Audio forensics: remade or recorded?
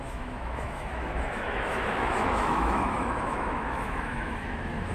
remade